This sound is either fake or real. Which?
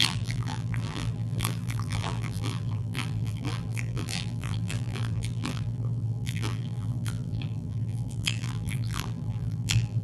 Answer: fake